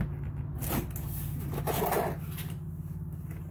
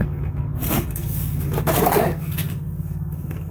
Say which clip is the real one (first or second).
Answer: first